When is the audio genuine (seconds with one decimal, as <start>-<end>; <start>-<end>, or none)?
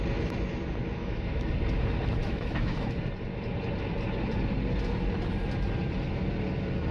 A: 0.0-1.0; 1.5-2.2; 3.0-6.9